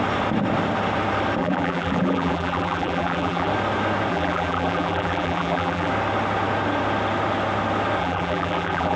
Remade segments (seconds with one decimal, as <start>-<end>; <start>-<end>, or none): 1.4-3.5; 4.1-5.9; 8.0-9.0